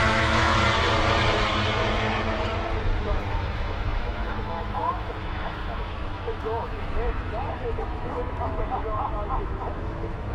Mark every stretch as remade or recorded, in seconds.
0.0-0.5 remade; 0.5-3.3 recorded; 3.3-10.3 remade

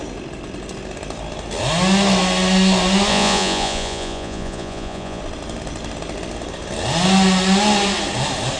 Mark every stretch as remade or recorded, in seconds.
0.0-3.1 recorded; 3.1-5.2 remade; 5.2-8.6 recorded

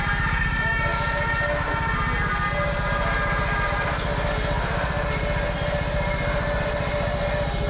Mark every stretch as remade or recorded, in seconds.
0.0-7.7 recorded